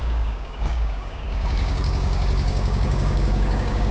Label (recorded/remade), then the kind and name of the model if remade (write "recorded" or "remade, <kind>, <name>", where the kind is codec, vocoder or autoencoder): remade, codec, DAC